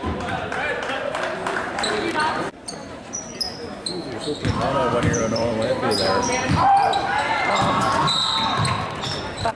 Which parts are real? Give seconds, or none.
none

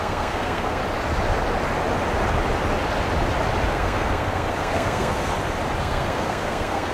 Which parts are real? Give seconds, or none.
0.8-3.7; 5.3-5.8

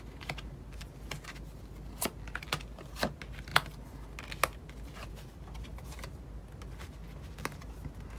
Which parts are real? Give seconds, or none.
0.0-8.2

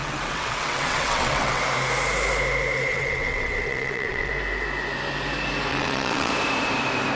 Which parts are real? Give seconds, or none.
1.6-2.9; 4.3-5.7; 6.3-7.2

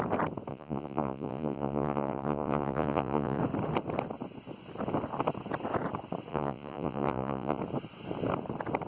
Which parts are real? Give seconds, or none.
0.0-0.5; 3.4-6.3; 7.6-8.9